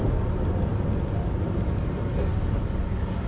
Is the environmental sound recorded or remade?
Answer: recorded